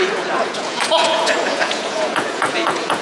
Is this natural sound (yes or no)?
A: no